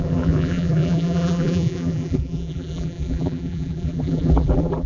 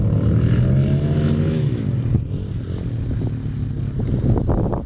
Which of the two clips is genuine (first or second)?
second